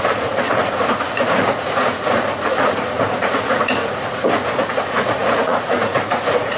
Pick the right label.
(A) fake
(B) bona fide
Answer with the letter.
A